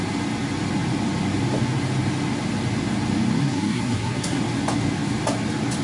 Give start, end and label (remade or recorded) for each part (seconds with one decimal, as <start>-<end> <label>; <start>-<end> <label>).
0.0-3.4 recorded; 3.4-4.4 remade; 4.4-5.8 recorded